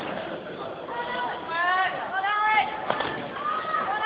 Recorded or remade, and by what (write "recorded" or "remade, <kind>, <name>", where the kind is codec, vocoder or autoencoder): recorded